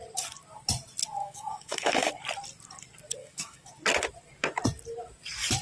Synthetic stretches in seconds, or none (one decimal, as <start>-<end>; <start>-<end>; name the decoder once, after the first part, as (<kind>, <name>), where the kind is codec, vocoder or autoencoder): 1.2-2.1 (autoencoder, DAC-VAE); 3.2-3.7